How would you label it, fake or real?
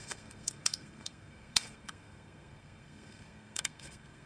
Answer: fake